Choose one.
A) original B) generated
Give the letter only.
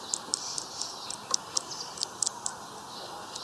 A